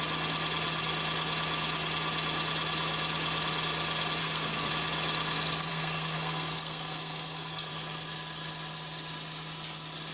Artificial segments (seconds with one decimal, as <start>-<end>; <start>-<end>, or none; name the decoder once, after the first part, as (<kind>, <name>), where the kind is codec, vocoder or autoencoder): 4.2-4.7 (codec, SNAC); 5.7-7.7

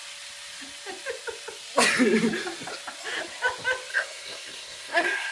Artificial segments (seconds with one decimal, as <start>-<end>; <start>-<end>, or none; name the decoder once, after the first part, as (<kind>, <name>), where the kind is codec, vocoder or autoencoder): 3.9-5.3 (codec, SNAC)

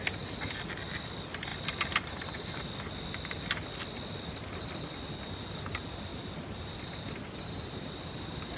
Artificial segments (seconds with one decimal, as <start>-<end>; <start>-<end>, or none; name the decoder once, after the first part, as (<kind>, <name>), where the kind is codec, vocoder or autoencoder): none